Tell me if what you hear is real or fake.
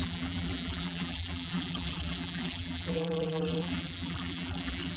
fake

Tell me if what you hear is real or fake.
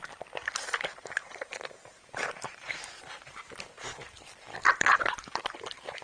fake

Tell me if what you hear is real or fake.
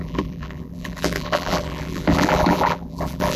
fake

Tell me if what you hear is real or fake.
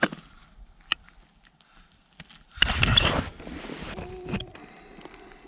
real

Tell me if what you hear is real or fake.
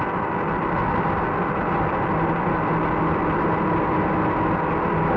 real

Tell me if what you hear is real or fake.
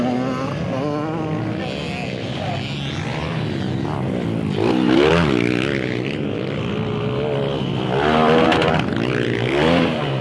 real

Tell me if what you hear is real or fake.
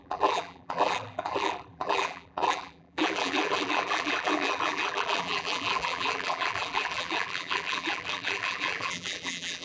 fake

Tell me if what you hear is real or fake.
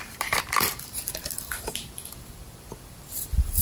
fake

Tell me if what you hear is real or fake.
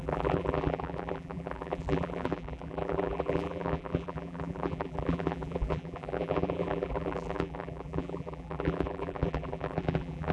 fake